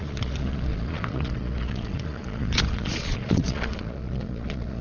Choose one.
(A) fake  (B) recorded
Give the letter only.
A